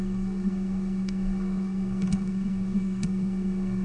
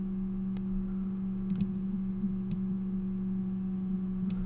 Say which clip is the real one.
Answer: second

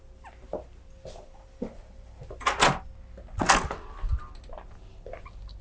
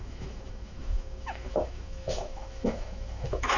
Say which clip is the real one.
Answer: first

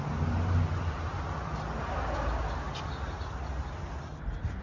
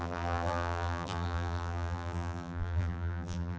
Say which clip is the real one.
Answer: first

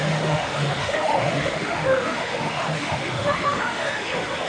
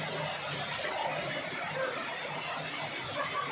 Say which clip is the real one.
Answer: second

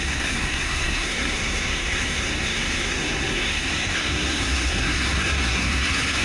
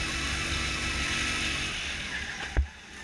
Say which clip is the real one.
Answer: second